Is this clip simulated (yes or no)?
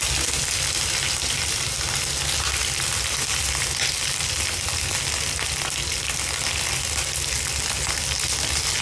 no